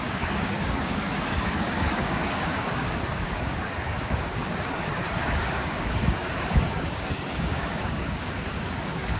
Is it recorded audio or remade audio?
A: remade